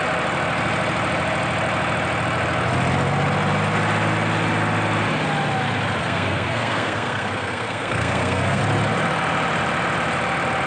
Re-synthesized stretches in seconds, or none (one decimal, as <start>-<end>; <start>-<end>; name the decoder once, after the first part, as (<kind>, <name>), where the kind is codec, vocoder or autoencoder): 6.0-8.6 (codec, SNAC)